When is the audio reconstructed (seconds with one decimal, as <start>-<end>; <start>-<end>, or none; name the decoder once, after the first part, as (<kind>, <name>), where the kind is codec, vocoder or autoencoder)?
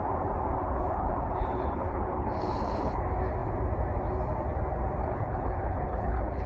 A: 0.6-3.0 (codec, HILCodec); 5.0-6.5